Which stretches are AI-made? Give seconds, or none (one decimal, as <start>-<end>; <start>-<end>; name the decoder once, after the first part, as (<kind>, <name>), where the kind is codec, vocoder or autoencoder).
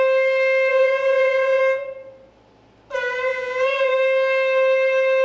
0.7-1.6 (vocoder, Vocos); 3.3-3.9